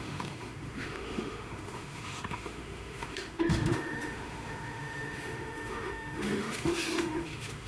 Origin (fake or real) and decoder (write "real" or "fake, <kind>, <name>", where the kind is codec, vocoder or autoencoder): fake, autoencoder, DAC-VAE